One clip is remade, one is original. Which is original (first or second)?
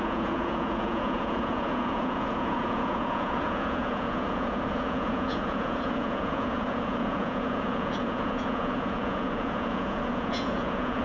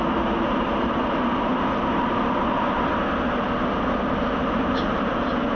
second